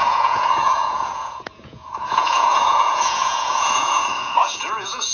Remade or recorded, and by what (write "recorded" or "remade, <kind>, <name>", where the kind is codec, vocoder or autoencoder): remade, vocoder, Vocos